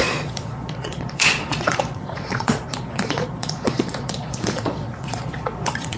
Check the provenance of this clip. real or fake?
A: fake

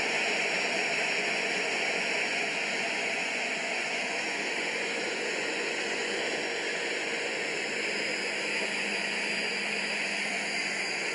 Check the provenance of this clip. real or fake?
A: fake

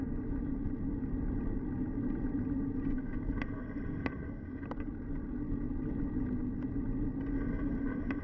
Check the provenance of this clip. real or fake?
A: real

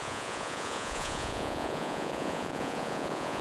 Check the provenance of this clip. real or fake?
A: fake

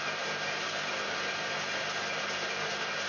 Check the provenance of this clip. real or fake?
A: real